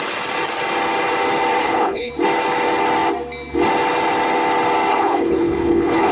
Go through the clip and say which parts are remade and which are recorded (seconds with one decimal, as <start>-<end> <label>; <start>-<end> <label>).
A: 0.0-1.6 recorded; 1.6-2.1 remade; 2.1-4.9 recorded; 4.9-6.1 remade